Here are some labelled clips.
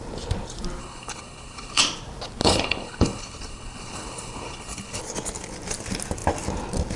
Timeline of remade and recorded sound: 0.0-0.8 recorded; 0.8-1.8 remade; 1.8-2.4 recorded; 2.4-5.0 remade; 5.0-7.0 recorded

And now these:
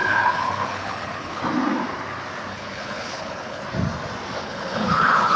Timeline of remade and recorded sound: 0.0-1.4 remade; 1.4-2.5 recorded; 2.5-3.6 remade; 3.6-4.4 recorded; 4.4-5.4 remade

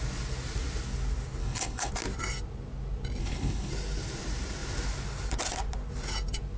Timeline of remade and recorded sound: 0.0-1.4 recorded; 1.4-1.9 remade; 1.9-3.2 recorded; 3.2-3.7 remade; 3.7-6.6 recorded

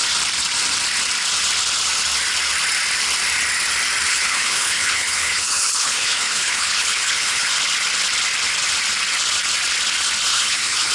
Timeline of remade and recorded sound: 0.0-4.1 recorded; 4.1-7.5 remade; 7.5-10.3 recorded; 10.3-10.9 remade

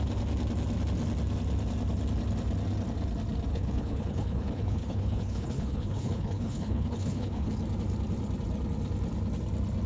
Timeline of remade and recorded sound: 0.0-3.5 recorded; 3.5-7.5 remade; 7.5-9.9 recorded